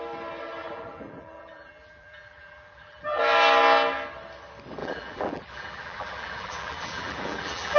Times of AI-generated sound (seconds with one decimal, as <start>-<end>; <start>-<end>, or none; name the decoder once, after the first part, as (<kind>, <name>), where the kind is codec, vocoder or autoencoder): 0.6-3.2 (vocoder, BigVGAN v2); 4.8-7.8